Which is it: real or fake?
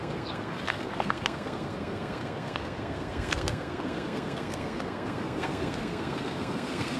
fake